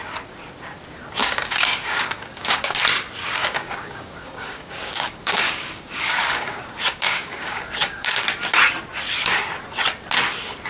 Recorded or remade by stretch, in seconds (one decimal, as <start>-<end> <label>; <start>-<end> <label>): 0.0-1.2 recorded; 1.2-2.8 remade; 2.8-3.2 recorded; 3.2-8.2 remade; 8.2-10.7 recorded